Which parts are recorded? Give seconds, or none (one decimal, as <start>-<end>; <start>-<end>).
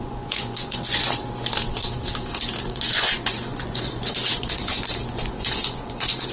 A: 1.2-2.6